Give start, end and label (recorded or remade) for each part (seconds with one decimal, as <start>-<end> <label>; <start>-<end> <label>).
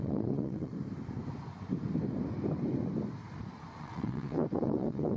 0.0-0.7 remade; 0.7-3.8 recorded; 3.8-5.2 remade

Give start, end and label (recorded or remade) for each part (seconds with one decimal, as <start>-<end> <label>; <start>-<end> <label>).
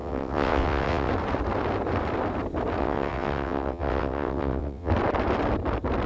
0.0-1.1 remade; 1.1-2.8 recorded; 2.8-4.9 remade; 4.9-6.1 recorded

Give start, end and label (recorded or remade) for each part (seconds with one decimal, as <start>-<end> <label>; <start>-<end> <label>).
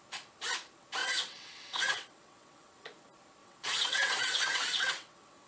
0.0-1.0 recorded; 1.0-3.0 remade; 3.0-3.4 recorded; 3.4-5.5 remade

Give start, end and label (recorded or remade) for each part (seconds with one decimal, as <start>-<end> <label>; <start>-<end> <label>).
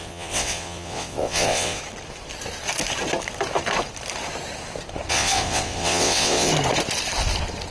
0.0-1.8 remade; 1.8-5.1 recorded; 5.1-6.5 remade; 6.5-7.7 recorded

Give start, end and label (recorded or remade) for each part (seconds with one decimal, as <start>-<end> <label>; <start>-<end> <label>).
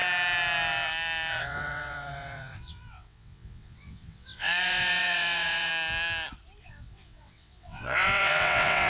0.0-1.4 recorded; 1.4-5.7 remade; 5.7-6.6 recorded; 6.6-8.9 remade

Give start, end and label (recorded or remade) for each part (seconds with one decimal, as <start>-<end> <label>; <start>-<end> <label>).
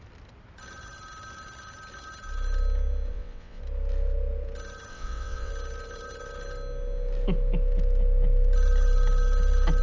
0.0-3.1 recorded; 3.1-3.6 remade; 3.6-4.9 recorded; 4.9-5.5 remade; 5.5-9.8 recorded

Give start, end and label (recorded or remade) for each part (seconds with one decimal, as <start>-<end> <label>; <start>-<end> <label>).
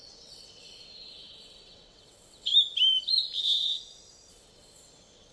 0.0-2.5 remade; 2.5-4.3 recorded; 4.3-5.3 remade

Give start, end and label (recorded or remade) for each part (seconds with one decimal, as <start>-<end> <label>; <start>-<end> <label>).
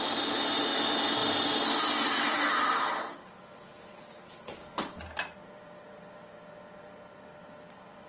0.0-8.1 recorded